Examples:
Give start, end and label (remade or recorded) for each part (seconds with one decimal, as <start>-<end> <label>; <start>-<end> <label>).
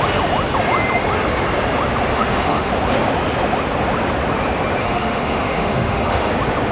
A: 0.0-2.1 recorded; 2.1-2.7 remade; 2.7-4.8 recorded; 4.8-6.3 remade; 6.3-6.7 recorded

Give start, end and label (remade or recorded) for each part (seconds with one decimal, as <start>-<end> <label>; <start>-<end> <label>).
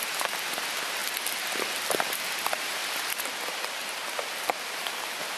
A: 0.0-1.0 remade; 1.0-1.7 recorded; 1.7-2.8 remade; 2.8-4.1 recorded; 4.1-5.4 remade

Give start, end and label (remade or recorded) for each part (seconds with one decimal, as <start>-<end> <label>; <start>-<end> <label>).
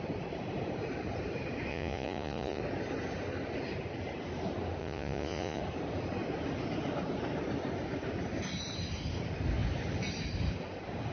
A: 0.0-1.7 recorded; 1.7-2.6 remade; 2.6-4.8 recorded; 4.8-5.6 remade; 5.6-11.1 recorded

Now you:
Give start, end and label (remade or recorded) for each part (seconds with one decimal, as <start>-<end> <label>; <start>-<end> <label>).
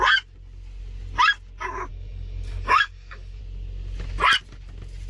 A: 0.0-1.9 recorded; 1.9-3.4 remade; 3.4-5.1 recorded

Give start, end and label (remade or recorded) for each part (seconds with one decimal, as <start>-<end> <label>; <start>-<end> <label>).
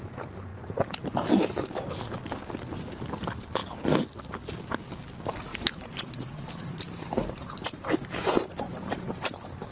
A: 0.0-5.5 recorded; 5.5-9.7 remade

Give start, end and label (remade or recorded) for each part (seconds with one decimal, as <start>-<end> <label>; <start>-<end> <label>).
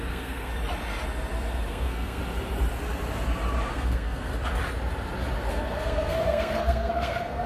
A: 0.0-0.5 remade; 0.5-1.7 recorded; 1.7-2.2 remade; 2.2-3.7 recorded; 3.7-4.3 remade; 4.3-5.5 recorded; 5.5-7.5 remade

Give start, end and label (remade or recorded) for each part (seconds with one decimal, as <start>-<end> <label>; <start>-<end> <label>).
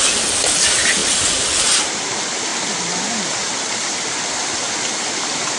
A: 0.0-5.6 recorded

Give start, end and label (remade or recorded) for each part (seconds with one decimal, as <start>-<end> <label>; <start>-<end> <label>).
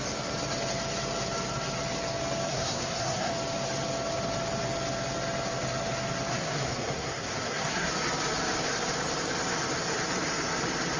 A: 0.0-2.5 recorded; 2.5-3.3 remade; 3.3-6.3 recorded; 6.3-7.9 remade; 7.9-11.0 recorded